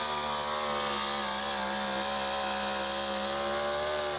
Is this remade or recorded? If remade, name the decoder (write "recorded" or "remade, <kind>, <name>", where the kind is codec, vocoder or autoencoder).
recorded